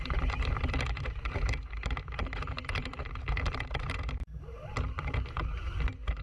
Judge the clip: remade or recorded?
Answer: remade